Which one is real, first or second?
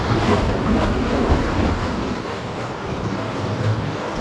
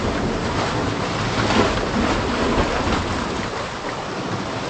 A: second